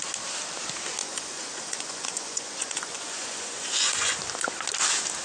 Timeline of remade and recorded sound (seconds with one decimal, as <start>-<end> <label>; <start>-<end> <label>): 0.0-1.0 recorded; 1.0-4.1 remade; 4.1-5.2 recorded

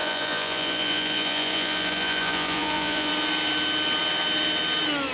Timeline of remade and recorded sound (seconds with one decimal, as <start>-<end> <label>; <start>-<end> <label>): 0.0-3.1 remade; 3.1-5.1 recorded

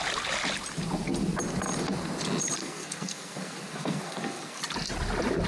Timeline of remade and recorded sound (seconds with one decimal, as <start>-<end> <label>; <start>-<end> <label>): 0.0-2.6 recorded; 2.6-4.6 remade; 4.6-5.5 recorded

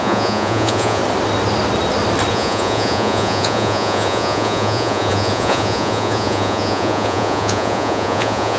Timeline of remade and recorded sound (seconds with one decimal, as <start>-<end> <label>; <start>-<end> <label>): 0.0-1.0 remade; 1.0-2.3 recorded; 2.3-8.6 remade

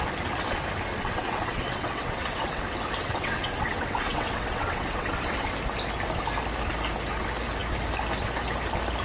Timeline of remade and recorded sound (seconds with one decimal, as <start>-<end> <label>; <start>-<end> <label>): 0.0-1.0 recorded; 1.0-2.6 remade; 2.6-3.0 recorded; 3.0-5.5 remade; 5.5-9.0 recorded

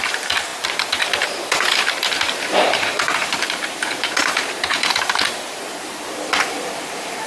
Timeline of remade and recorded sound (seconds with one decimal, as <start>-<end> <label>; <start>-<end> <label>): 0.0-7.3 remade